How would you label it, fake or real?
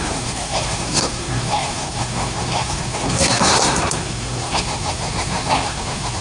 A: fake